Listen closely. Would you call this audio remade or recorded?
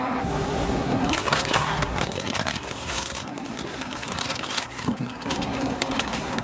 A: remade